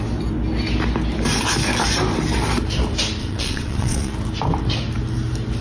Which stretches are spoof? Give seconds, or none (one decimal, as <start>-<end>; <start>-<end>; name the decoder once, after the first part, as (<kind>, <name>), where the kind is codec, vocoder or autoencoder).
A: 3.2-4.1 (vocoder, WaveNeXt)